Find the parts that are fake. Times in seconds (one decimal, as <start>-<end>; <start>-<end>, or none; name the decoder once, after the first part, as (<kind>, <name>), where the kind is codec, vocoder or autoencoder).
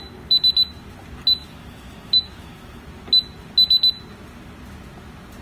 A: 1.4-2.8 (autoencoder, DAC-VAE)